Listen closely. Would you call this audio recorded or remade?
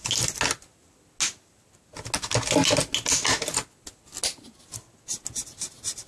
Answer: recorded